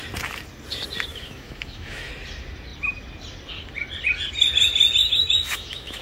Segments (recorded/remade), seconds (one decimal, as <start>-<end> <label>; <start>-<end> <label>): 0.0-1.1 recorded; 1.1-2.1 remade; 2.1-5.0 recorded; 5.0-6.0 remade